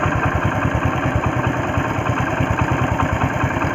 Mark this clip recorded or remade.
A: recorded